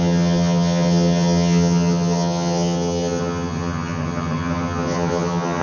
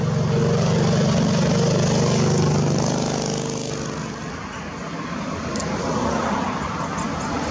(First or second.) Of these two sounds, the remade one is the first